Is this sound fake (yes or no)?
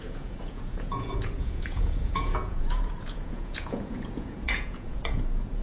yes